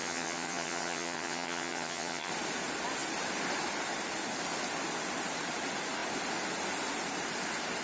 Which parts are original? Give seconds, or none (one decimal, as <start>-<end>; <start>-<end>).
2.3-7.8